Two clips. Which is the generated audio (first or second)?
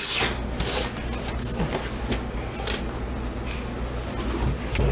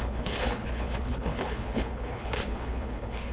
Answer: second